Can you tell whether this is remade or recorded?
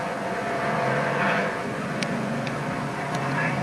remade